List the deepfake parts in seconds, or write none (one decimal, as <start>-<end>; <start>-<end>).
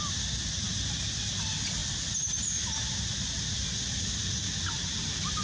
none